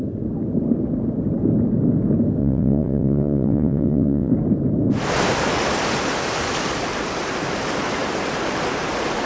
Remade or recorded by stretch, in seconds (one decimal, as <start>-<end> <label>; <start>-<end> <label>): 0.0-2.4 recorded; 2.4-4.3 remade; 4.3-9.2 recorded